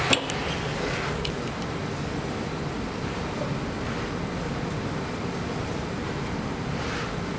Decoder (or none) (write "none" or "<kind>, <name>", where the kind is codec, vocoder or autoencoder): none